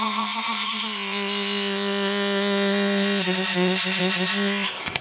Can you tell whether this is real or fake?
fake